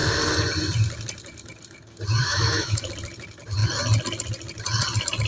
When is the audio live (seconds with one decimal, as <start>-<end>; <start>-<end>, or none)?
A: 0.0-2.2; 2.9-5.3